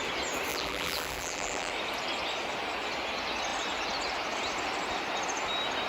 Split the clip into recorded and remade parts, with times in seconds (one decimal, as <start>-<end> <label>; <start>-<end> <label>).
0.0-0.5 recorded; 0.5-1.7 remade; 1.7-5.9 recorded